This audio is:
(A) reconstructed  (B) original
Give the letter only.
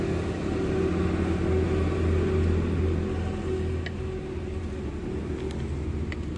B